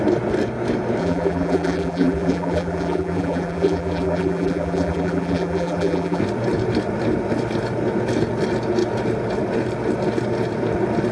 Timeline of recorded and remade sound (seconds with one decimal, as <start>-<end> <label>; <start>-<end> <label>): 0.0-1.0 recorded; 1.0-6.2 remade; 6.2-11.1 recorded